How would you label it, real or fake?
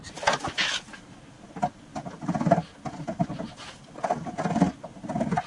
real